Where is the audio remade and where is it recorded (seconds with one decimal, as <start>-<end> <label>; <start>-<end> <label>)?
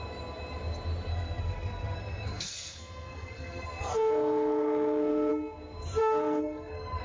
0.0-1.1 recorded; 1.1-5.3 remade; 5.3-6.0 recorded; 6.0-7.0 remade